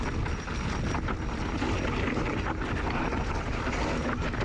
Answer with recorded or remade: recorded